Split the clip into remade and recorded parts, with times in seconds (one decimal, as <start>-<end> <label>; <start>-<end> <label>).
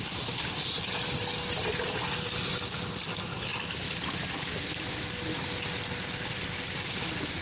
0.0-7.4 recorded